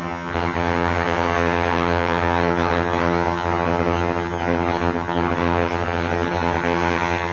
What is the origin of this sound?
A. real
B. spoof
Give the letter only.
B